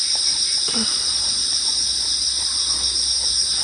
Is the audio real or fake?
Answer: real